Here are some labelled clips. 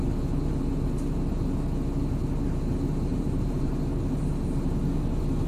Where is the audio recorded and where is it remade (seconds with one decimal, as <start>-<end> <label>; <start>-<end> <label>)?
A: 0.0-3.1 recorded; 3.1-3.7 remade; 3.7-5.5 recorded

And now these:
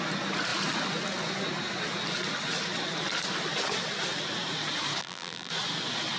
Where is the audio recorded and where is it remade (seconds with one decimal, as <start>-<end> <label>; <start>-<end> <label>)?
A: 0.0-5.0 recorded; 5.0-5.5 remade; 5.5-6.2 recorded

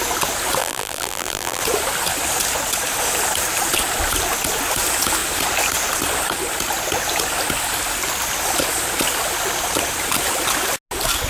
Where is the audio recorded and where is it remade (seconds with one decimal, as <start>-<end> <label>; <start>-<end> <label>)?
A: 0.0-0.6 recorded; 0.6-1.6 remade; 1.6-11.3 recorded

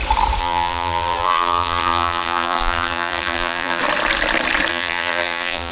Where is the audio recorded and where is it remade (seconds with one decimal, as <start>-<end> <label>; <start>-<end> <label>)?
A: 0.0-0.4 recorded; 0.4-3.8 remade; 3.8-4.7 recorded; 4.7-5.7 remade

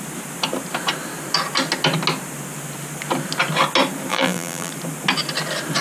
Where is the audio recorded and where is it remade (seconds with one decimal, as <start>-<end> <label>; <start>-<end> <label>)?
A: 0.0-4.1 recorded; 4.1-4.7 remade; 4.7-5.8 recorded